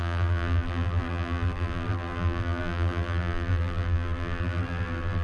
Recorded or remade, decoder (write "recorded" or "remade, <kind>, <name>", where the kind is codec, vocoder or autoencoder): remade, vocoder, BigVGAN v2